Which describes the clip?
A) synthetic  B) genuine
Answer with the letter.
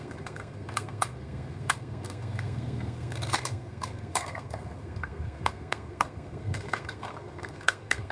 A